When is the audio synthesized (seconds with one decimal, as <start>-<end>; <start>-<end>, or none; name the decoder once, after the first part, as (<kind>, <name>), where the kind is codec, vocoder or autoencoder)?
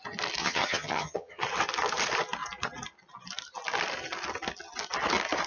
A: 0.4-1.4 (vocoder, HiFi-GAN)